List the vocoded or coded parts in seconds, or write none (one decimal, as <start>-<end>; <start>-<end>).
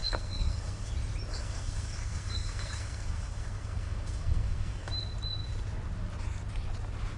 0.0-0.9; 1.3-4.9